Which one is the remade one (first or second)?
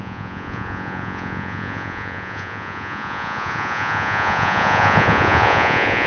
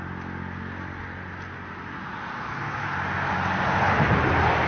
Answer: first